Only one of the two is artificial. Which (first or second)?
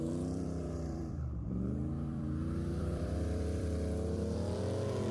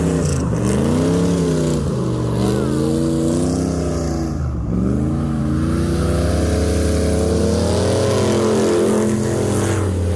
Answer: first